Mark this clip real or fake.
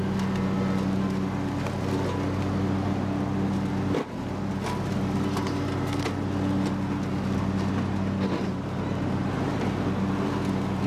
real